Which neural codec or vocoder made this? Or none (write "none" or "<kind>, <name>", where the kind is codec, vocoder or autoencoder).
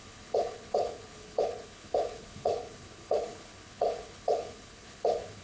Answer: codec, HILCodec